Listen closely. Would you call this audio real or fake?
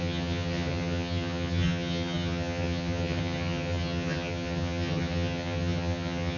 fake